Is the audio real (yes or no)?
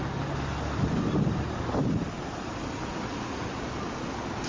yes